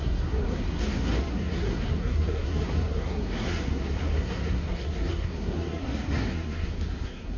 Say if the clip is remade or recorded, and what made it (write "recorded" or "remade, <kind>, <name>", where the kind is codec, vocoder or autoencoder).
remade, codec, SNAC